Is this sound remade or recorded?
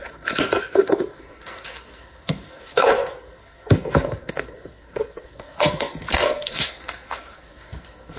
remade